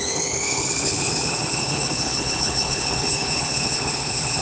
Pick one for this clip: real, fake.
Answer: fake